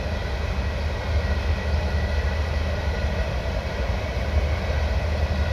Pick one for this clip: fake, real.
real